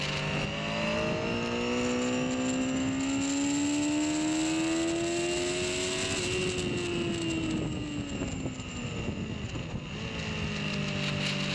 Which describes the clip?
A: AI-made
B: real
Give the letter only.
B